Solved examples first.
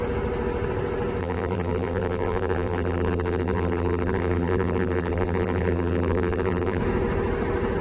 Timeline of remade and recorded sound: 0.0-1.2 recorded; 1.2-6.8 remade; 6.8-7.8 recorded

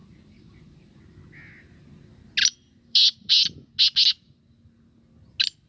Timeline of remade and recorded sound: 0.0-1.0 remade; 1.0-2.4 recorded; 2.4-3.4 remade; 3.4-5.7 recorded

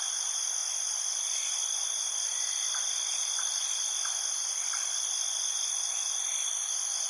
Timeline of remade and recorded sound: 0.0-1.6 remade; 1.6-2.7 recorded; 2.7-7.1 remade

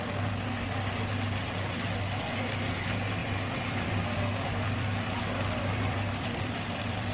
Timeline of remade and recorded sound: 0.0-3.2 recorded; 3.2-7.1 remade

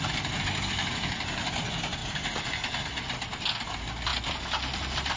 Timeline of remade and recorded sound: 0.0-2.0 recorded; 2.0-2.5 remade; 2.5-4.1 recorded; 4.1-5.2 remade

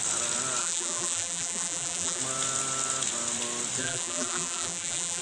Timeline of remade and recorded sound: 0.0-0.6 recorded; 0.6-2.2 remade; 2.2-3.8 recorded; 3.8-5.2 remade